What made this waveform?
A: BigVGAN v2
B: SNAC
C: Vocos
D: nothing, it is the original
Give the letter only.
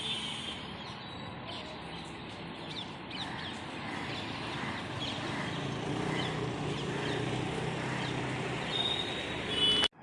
D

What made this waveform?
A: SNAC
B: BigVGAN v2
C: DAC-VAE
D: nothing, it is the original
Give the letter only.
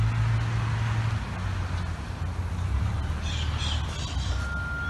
D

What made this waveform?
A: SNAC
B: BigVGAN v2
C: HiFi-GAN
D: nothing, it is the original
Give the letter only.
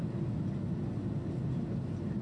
D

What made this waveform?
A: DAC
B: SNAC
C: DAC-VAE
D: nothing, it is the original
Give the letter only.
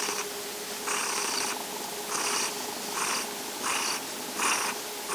D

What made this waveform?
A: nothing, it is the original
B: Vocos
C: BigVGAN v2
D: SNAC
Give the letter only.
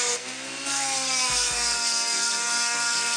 D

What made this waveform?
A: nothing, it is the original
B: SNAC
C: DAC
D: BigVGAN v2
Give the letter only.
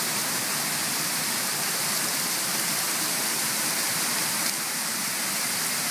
A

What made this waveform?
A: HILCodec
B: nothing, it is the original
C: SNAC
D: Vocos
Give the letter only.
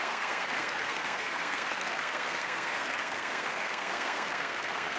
C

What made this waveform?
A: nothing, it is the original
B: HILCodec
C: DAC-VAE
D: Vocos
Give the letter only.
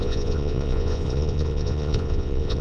D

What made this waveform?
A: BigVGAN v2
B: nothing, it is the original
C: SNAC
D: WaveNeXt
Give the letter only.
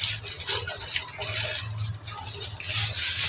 B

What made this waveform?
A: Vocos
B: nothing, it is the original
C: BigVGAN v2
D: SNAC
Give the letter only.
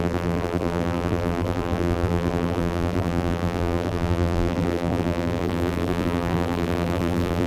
C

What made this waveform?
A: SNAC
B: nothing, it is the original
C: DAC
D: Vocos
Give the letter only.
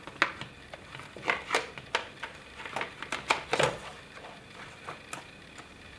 B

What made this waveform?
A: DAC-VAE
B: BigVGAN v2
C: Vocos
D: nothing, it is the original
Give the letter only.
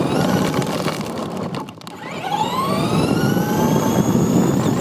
D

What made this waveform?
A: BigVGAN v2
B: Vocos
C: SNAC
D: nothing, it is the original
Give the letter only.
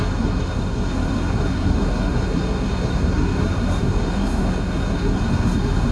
C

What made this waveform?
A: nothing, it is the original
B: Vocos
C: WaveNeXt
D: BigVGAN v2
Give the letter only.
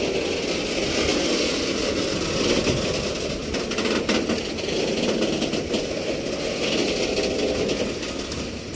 A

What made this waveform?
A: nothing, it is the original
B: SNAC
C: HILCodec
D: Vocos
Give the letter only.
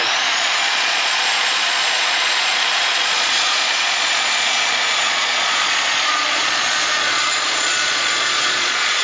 D